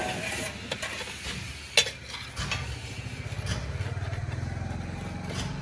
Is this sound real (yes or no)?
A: yes